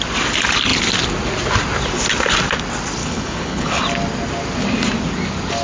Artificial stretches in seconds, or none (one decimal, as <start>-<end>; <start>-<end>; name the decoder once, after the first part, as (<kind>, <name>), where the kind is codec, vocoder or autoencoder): 3.0-3.8 (codec, HILCodec)